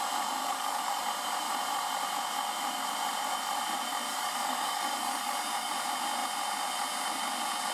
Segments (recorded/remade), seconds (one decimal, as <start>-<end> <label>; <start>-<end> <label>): 0.0-0.4 recorded; 0.4-1.0 remade; 1.0-4.1 recorded; 4.1-5.7 remade; 5.7-7.7 recorded